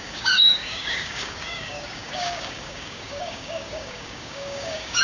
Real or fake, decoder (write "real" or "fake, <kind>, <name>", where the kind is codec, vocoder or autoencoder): fake, codec, DAC